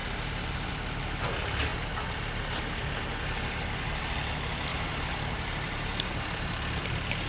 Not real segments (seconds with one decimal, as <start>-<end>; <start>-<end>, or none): 4.7-6.5